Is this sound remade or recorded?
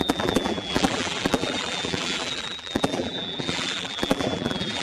remade